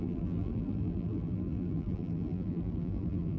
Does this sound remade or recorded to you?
remade